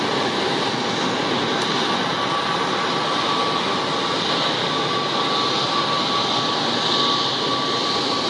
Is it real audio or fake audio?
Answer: real